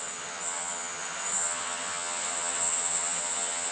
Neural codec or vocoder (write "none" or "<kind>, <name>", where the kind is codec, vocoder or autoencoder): vocoder, HiFi-GAN